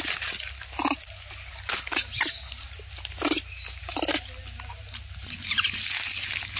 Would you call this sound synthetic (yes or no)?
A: no